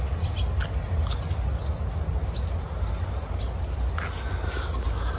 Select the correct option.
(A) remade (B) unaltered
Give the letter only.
B